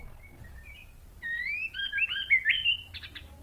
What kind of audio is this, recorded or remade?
recorded